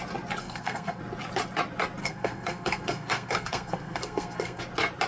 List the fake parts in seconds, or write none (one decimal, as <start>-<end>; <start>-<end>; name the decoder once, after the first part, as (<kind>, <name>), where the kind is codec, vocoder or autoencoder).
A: 0.4-1.0 (codec, SNAC); 2.0-4.6